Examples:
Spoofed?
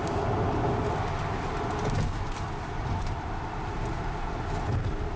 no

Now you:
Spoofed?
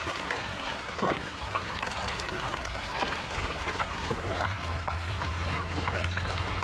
yes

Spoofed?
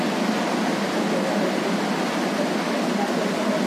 no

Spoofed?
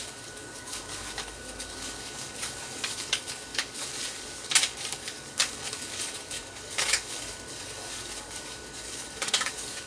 yes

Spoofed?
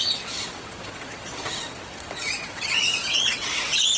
yes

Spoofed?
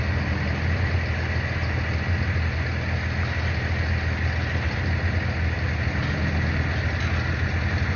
no